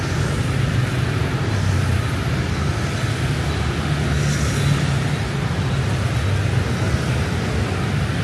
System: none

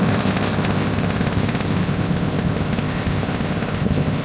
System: codec, ZipCodec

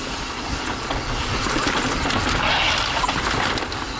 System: none